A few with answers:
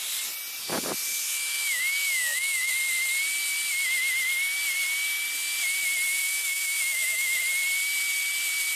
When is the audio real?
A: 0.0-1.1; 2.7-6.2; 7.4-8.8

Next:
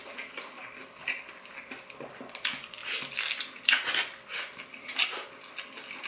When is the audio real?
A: 0.0-6.1